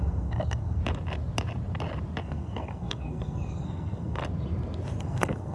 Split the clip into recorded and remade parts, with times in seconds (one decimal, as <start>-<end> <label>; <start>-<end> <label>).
0.0-0.8 remade; 0.8-2.2 recorded; 2.2-4.2 remade; 4.2-5.0 recorded; 5.0-5.5 remade